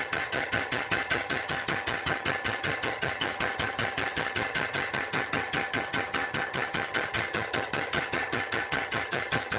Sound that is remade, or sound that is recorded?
remade